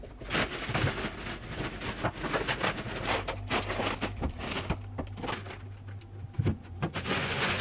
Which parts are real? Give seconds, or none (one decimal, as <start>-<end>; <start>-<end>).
0.0-6.5